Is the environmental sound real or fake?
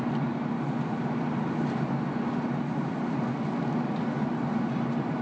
real